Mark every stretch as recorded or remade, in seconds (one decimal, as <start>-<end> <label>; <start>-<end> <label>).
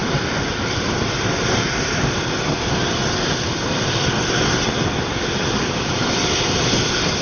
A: 0.0-1.9 remade; 1.9-2.8 recorded; 2.8-4.1 remade; 4.1-7.2 recorded